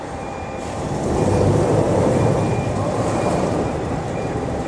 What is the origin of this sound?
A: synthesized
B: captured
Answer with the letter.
A